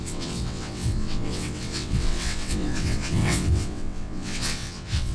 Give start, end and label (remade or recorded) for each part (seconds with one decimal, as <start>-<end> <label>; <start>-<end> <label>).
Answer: 0.0-5.1 remade